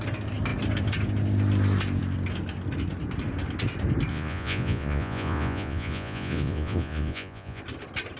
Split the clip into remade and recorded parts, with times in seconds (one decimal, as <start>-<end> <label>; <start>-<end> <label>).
0.0-4.1 recorded; 4.1-7.6 remade; 7.6-8.2 recorded